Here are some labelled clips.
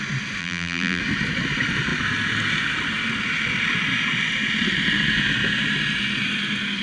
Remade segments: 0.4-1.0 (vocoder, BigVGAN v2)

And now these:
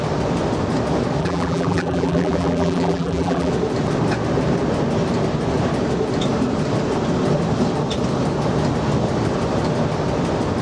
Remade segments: 1.2-3.5 (vocoder, BigVGAN v2)

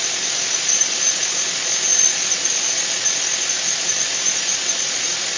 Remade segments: none

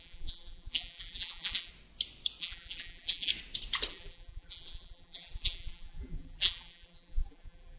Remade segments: 0.0-1.7 (vocoder, BigVGAN v2); 2.4-3.3; 3.9-7.8

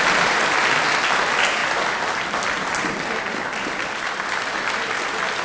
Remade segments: 1.6-4.8 (vocoder, BigVGAN v2)

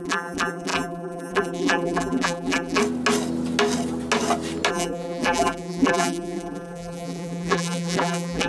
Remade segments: 0.0-2.8 (vocoder, BigVGAN v2); 4.7-8.5